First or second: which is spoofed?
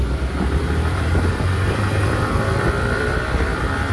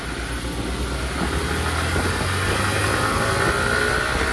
first